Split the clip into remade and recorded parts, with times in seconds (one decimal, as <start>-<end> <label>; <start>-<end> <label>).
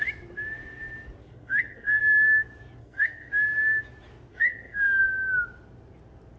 0.0-1.2 recorded; 1.2-2.0 remade; 2.0-2.8 recorded; 2.8-3.3 remade; 3.3-4.3 recorded; 4.3-5.0 remade; 5.0-6.4 recorded